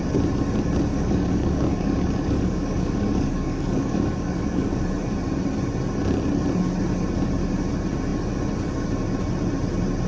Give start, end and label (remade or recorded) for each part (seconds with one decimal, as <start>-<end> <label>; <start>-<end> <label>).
0.0-0.9 recorded; 0.9-4.8 remade; 4.8-10.1 recorded